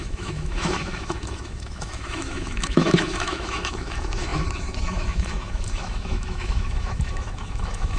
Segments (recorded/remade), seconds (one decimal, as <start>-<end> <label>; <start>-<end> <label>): 0.0-8.0 remade